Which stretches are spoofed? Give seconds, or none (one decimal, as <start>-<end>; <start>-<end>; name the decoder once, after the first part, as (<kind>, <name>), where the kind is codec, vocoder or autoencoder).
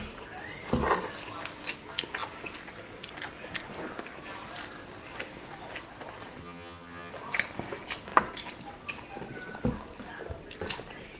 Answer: 6.4-7.1 (vocoder, HiFi-GAN)